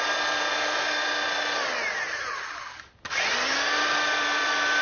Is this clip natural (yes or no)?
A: yes